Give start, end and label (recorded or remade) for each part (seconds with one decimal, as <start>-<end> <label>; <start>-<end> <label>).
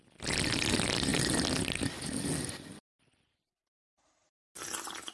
0.0-5.1 recorded